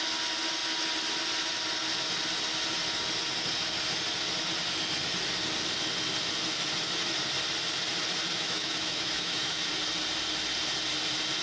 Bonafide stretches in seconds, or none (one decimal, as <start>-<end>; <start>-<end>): 0.0-8.3; 9.7-11.4